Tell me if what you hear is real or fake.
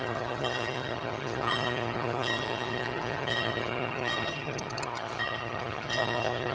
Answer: fake